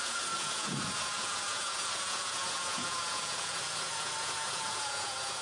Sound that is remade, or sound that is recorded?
remade